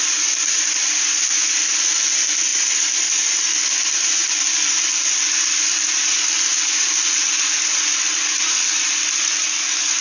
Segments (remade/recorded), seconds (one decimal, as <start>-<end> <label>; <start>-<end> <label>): 0.0-4.2 recorded; 4.2-5.5 remade; 5.5-6.5 recorded; 6.5-7.1 remade; 7.1-10.0 recorded